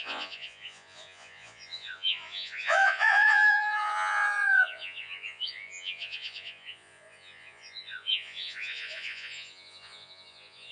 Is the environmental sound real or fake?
fake